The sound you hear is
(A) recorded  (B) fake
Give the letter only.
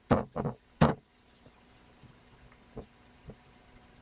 B